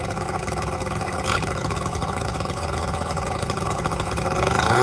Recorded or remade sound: remade